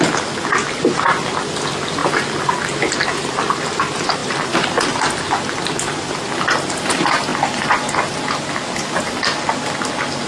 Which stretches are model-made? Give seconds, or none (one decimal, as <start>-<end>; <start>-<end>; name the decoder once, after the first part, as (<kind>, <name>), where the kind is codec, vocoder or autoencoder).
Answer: 2.0-3.5 (vocoder, BigVGAN v2); 4.2-5.0